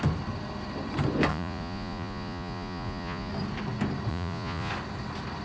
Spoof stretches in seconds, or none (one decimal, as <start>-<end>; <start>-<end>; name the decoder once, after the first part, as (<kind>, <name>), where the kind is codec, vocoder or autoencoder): 1.3-3.3 (vocoder, Vocos); 4.1-4.7